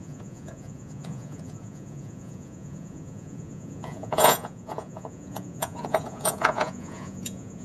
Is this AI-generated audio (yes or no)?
yes